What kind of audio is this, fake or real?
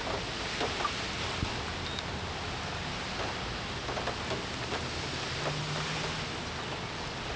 real